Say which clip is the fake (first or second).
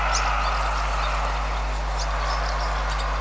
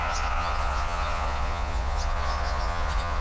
second